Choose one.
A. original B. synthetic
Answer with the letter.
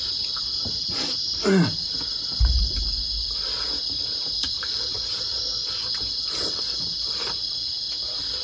A